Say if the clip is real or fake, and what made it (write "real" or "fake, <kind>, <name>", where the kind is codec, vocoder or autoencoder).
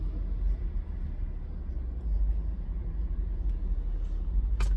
real